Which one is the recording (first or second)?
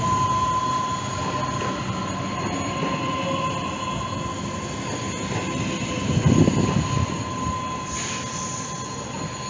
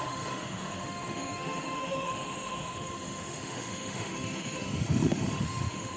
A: first